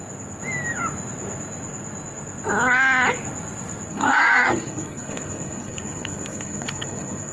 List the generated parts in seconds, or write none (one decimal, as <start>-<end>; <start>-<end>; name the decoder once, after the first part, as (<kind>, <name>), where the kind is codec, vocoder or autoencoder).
3.9-7.3 (codec, SNAC)